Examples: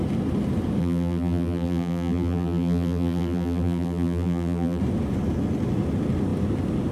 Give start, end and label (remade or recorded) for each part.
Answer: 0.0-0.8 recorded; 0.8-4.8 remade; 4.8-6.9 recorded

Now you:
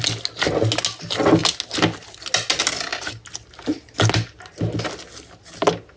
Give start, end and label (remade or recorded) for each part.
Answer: 0.0-6.0 recorded

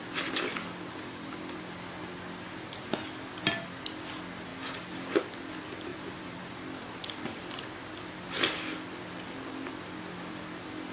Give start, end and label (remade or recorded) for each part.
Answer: 0.0-5.9 recorded; 5.9-6.4 remade; 6.4-10.9 recorded

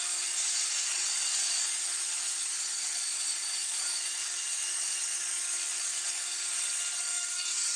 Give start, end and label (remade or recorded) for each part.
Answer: 0.0-7.8 remade

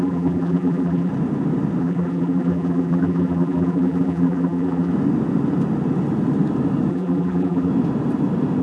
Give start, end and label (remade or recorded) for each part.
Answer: 0.0-1.1 remade; 1.1-1.8 recorded; 1.8-4.9 remade; 4.9-6.9 recorded; 6.9-7.7 remade; 7.7-8.6 recorded

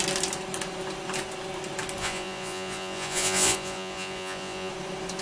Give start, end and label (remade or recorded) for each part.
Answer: 0.0-2.0 recorded; 2.0-4.7 remade; 4.7-5.2 recorded